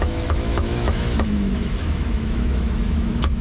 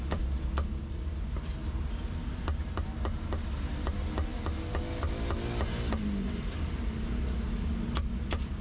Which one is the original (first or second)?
second